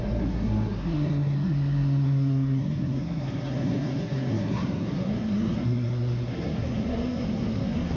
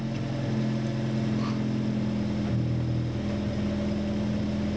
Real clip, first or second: second